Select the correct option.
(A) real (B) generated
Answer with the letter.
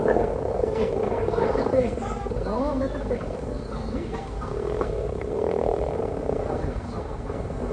B